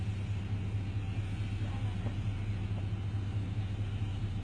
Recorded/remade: recorded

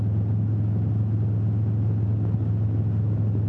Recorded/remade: recorded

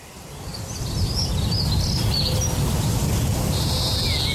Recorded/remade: recorded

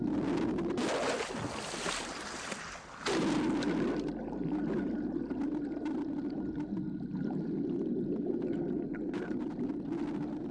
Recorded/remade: recorded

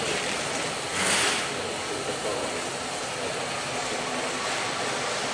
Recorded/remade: recorded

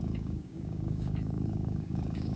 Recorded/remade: remade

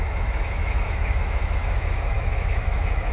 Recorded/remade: remade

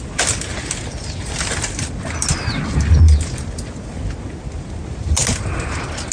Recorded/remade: recorded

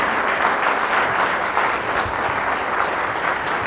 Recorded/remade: recorded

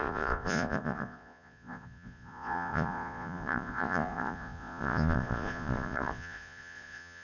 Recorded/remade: remade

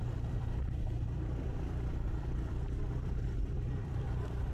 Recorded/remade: remade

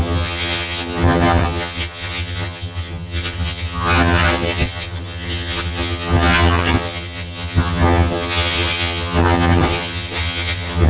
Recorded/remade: remade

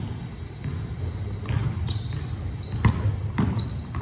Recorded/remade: recorded